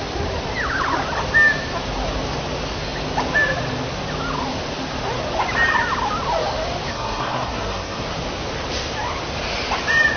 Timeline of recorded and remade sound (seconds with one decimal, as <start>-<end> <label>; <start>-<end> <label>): 0.0-6.9 recorded; 6.9-8.0 remade; 8.0-10.2 recorded